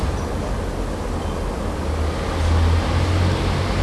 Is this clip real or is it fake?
real